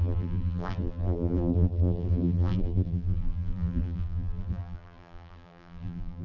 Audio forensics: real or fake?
fake